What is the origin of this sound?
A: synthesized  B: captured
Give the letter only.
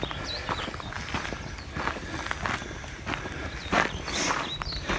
B